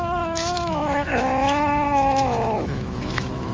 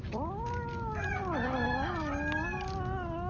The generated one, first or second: first